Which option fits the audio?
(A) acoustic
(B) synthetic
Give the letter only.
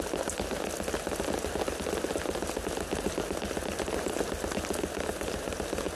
A